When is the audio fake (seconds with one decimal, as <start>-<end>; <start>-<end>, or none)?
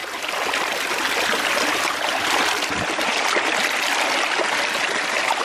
0.0-3.2